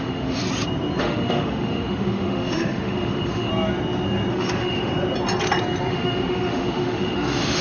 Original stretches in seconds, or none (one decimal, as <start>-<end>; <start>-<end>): 0.4-1.0; 3.5-4.3; 4.9-5.9